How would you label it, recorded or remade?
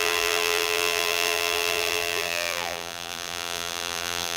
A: remade